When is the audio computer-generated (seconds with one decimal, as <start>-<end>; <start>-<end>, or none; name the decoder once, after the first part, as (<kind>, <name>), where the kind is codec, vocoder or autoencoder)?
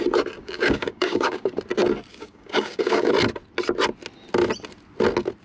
0.4-1.6 (codec, DAC); 2.1-3.1